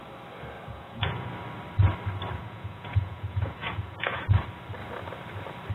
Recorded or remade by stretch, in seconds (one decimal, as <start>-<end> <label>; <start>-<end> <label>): 0.0-0.7 recorded; 0.7-1.3 remade; 1.3-2.4 recorded; 2.4-4.2 remade; 4.2-5.7 recorded

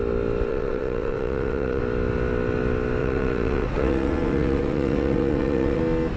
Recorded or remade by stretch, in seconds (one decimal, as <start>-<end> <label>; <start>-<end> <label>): 0.0-0.5 recorded; 0.5-1.8 remade; 1.8-3.0 recorded; 3.0-5.8 remade; 5.8-6.2 recorded

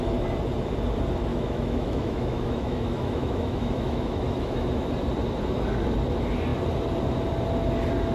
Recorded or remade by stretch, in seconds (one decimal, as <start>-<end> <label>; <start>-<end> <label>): 0.0-1.3 recorded; 1.3-4.9 remade; 4.9-8.1 recorded

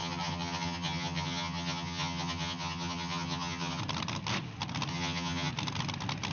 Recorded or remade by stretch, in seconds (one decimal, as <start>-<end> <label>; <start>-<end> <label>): 0.0-3.8 remade; 3.8-4.9 recorded; 4.9-5.5 remade; 5.5-6.3 recorded

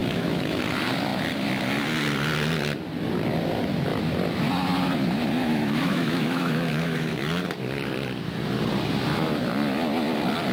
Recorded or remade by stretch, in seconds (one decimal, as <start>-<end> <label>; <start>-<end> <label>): 0.0-0.6 remade; 0.6-5.4 recorded; 5.4-7.1 remade; 7.1-10.5 recorded